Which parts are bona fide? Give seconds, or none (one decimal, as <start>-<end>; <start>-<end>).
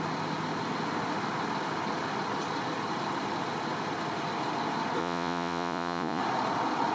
0.0-5.0; 6.2-6.9